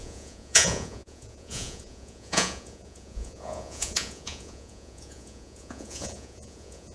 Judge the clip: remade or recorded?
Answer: remade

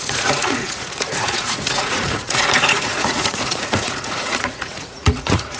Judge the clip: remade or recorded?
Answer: remade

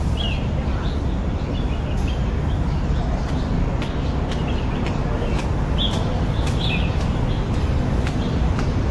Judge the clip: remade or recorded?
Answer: recorded